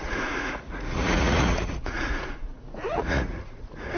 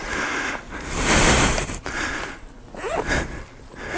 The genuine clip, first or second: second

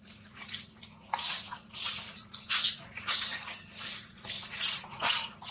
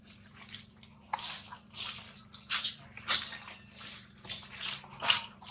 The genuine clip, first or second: second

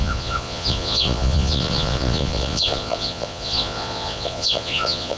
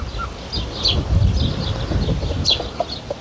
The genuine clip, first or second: second